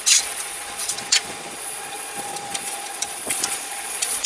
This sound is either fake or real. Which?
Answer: fake